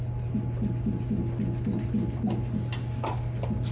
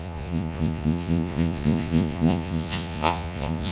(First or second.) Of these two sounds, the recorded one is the first